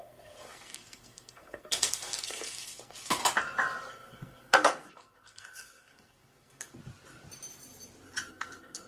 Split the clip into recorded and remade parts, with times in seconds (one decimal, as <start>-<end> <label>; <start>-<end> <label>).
0.0-3.2 remade; 3.2-3.9 recorded; 3.9-6.8 remade; 6.8-8.3 recorded; 8.3-8.9 remade